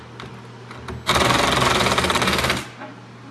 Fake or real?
real